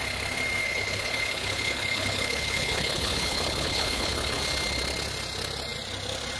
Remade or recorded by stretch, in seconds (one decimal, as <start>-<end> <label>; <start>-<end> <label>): 0.0-0.6 recorded; 0.6-4.4 remade; 4.4-6.4 recorded